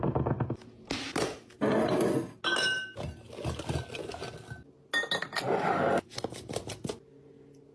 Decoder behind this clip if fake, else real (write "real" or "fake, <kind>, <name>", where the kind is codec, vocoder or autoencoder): real